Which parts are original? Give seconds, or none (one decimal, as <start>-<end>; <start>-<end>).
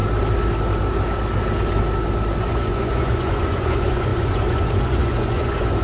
0.0-2.4